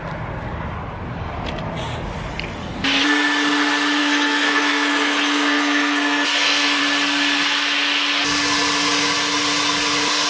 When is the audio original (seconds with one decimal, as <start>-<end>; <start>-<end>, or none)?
0.0-4.0; 6.8-10.3